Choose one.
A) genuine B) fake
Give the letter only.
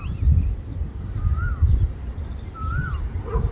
A